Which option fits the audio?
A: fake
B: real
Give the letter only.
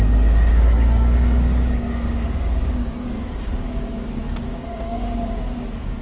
A